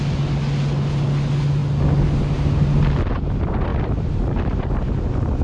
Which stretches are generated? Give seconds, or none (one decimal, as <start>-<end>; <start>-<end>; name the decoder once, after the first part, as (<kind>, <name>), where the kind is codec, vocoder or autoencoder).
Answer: none

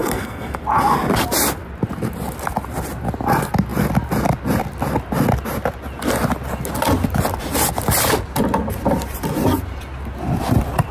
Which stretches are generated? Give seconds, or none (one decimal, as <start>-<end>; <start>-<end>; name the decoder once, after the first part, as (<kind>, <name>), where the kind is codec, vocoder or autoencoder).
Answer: 0.0-0.6 (codec, SNAC)

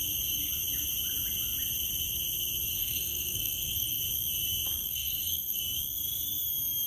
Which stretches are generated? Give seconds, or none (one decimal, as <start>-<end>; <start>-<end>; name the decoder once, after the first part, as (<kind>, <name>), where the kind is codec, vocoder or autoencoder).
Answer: 2.8-4.0 (codec, SNAC); 4.8-5.6

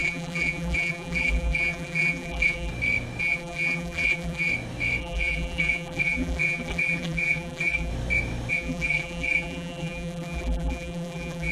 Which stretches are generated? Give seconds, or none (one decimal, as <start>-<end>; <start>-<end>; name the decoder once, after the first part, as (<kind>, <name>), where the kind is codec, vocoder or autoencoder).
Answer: 0.0-2.7 (vocoder, BigVGAN v2); 3.2-4.5; 5.0-7.9; 8.5-11.5

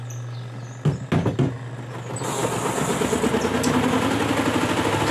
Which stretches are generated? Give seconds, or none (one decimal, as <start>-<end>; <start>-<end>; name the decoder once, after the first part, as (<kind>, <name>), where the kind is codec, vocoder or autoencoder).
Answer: none

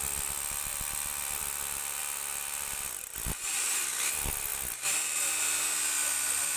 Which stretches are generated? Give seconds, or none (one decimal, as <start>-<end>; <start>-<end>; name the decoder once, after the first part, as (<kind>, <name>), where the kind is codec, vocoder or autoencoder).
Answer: none

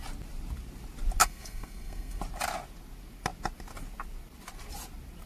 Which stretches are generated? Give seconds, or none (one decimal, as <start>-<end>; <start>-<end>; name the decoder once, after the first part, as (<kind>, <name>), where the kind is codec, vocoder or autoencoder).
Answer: 1.2-2.2 (codec, SNAC)

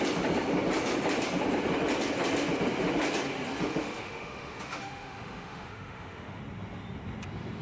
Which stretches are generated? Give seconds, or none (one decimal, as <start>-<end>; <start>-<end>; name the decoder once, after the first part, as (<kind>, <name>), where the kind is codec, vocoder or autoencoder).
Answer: 3.7-6.4 (autoencoder, DAC-VAE)